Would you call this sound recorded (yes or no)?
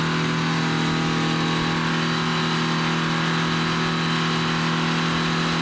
yes